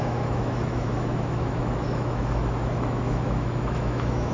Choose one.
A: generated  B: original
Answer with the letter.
A